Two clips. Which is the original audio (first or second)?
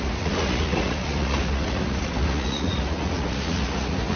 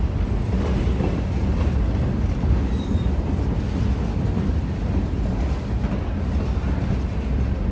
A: second